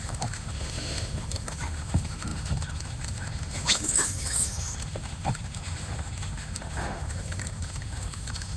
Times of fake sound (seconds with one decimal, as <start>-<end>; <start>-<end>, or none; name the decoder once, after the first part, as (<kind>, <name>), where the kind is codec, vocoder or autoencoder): 0.0-8.6 (autoencoder, DAC-VAE)